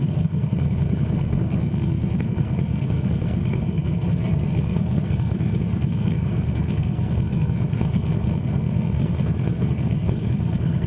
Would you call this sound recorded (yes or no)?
no